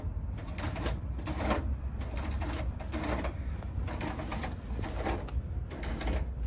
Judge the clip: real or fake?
fake